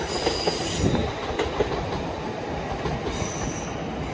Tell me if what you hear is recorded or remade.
recorded